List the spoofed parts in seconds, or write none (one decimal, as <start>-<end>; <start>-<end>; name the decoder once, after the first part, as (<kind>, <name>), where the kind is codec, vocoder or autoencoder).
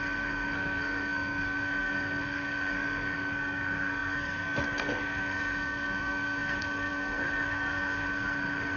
0.0-8.8 (codec, SNAC)